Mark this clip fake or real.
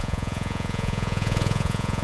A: fake